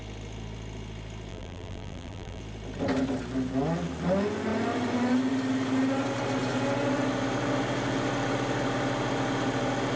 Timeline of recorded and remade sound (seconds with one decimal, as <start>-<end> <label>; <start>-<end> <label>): 0.0-1.3 recorded; 1.3-2.4 remade; 2.4-10.0 recorded

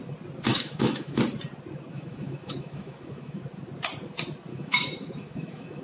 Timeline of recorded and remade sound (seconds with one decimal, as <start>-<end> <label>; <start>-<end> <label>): 0.0-0.5 recorded; 0.5-1.2 remade; 1.2-1.9 recorded; 1.9-3.4 remade; 3.4-4.5 recorded; 4.5-5.8 remade

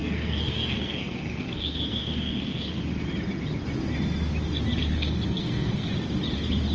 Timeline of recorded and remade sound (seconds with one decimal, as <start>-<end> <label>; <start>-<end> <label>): 0.0-2.8 remade; 2.8-4.8 recorded; 4.8-5.9 remade; 5.9-6.7 recorded

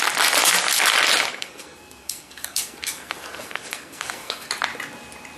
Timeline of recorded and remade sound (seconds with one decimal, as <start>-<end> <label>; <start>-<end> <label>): 0.0-1.3 recorded; 1.3-4.5 remade; 4.5-5.4 recorded